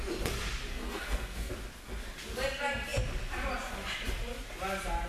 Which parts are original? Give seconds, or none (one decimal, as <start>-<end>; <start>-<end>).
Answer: 0.0-0.7; 1.5-5.1